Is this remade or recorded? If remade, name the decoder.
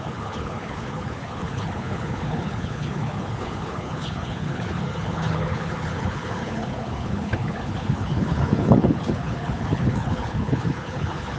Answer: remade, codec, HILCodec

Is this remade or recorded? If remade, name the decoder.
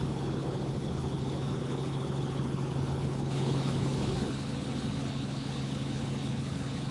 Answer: remade, codec, HILCodec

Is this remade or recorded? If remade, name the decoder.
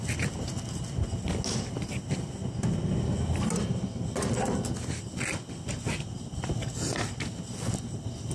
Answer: recorded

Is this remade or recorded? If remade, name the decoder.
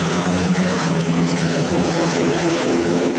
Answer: remade, codec, HILCodec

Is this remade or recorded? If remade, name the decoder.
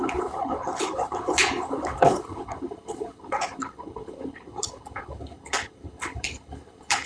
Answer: remade, codec, HILCodec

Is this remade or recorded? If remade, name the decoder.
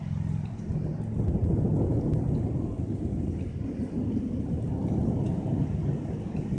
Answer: recorded